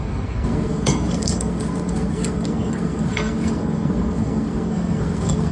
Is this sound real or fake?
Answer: fake